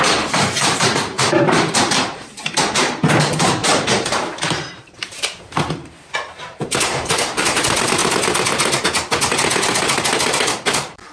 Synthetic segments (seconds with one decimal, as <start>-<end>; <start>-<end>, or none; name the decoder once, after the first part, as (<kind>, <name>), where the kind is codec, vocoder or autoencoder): 0.0-8.0 (vocoder, BigVGAN v2); 10.0-11.1